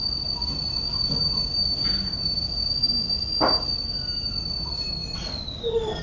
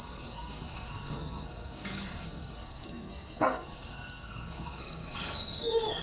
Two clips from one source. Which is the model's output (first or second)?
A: second